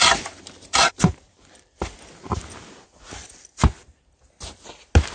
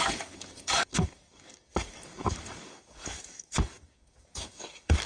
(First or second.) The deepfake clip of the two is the second